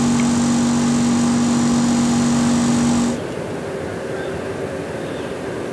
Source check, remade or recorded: recorded